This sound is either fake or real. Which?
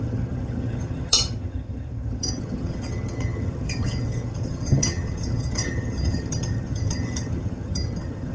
fake